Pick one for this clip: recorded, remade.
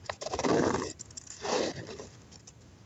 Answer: remade